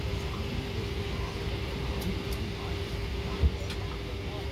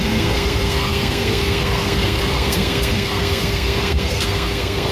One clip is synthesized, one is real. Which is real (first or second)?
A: first